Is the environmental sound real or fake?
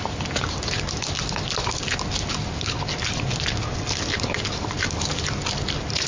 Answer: real